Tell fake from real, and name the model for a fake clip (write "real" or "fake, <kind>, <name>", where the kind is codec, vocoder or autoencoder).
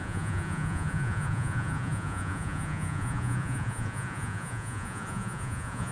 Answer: fake, vocoder, Vocos